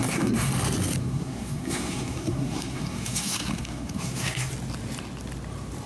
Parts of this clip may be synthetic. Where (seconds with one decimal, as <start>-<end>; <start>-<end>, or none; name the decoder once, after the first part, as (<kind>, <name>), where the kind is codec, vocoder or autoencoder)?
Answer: 0.0-0.5 (codec, SNAC); 1.0-4.5